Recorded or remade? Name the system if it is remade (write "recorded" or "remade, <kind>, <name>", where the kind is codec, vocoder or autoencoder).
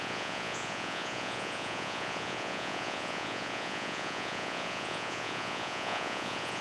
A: remade, vocoder, Vocos